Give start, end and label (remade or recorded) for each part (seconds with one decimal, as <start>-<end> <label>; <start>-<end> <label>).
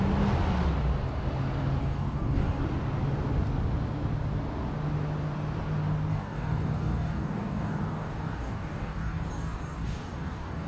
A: 0.0-1.8 recorded; 1.8-2.6 remade; 2.6-6.1 recorded; 6.1-10.7 remade